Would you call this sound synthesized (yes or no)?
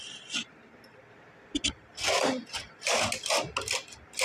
no